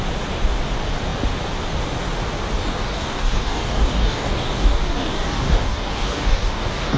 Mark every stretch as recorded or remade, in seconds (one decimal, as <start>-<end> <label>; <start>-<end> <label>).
0.0-2.6 recorded; 2.6-7.0 remade